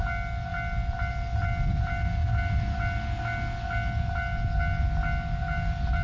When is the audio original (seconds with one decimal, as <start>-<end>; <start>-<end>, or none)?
0.0-6.0